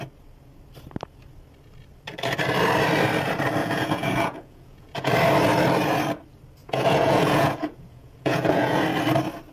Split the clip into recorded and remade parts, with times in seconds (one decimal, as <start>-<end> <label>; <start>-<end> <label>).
0.0-3.6 recorded; 3.6-5.1 remade; 5.1-6.6 recorded; 6.6-8.8 remade; 8.8-9.5 recorded